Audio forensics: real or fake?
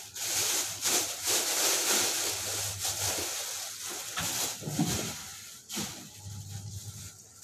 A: real